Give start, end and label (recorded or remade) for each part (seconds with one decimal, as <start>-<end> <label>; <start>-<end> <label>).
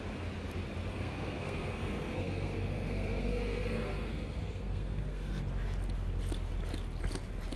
0.0-0.9 recorded; 0.9-5.4 remade; 5.4-7.6 recorded